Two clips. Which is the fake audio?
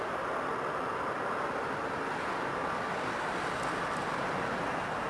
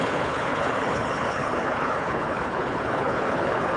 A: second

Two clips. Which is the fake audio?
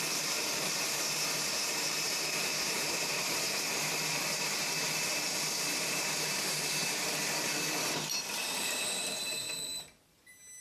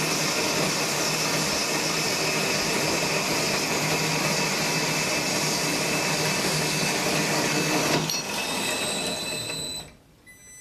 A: first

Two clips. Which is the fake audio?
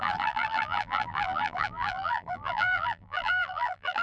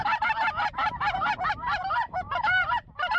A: first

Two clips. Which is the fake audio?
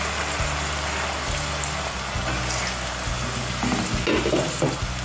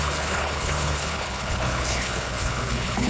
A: second